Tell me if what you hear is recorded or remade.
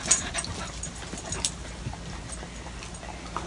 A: recorded